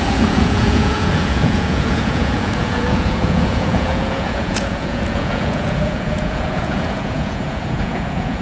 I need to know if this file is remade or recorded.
remade